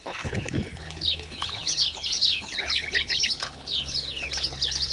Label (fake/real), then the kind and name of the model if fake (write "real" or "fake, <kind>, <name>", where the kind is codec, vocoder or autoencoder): fake, codec, HILCodec